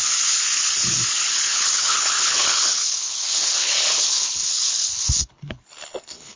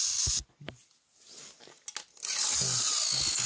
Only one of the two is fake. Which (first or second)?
first